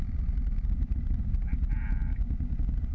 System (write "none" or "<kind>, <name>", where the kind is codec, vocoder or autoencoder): none